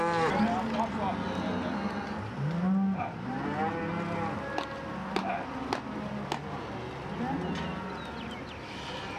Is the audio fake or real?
real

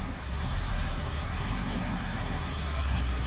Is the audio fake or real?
fake